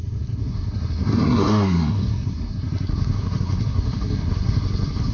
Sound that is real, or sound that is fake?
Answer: fake